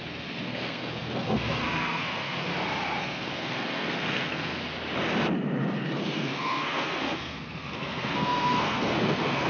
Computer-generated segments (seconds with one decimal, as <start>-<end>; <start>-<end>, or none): 0.0-2.5; 3.0-4.6; 6.0-9.5